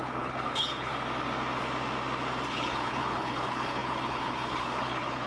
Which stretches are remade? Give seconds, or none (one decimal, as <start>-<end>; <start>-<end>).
0.0-0.9; 2.5-5.3